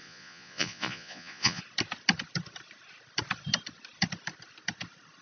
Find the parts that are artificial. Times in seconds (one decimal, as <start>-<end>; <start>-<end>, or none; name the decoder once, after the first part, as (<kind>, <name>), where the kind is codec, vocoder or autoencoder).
0.0-1.6 (vocoder, Vocos)